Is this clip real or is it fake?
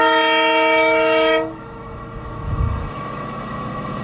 fake